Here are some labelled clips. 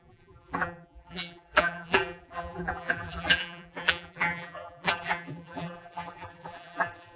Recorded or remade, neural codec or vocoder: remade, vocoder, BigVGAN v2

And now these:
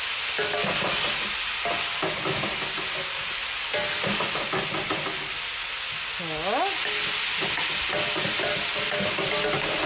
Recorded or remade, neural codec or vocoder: recorded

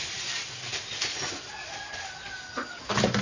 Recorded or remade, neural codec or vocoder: recorded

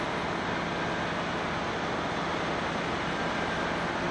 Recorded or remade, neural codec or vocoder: recorded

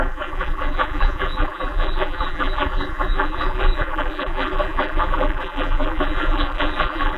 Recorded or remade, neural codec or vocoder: remade, vocoder, BigVGAN v2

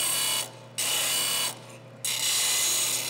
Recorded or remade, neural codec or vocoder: recorded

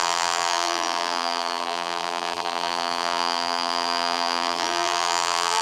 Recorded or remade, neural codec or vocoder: remade, vocoder, BigVGAN v2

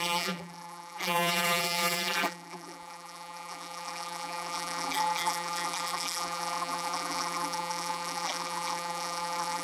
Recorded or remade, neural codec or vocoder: remade, vocoder, BigVGAN v2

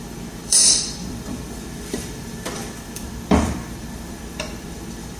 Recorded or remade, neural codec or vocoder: remade, vocoder, BigVGAN v2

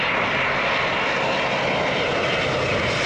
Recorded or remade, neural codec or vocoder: recorded